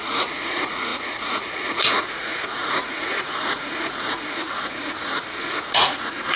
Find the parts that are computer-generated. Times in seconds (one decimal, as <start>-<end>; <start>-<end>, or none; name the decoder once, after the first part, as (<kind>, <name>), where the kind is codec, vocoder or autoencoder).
0.0-6.4 (vocoder, Vocos)